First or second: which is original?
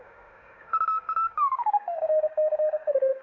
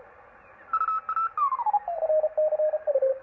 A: second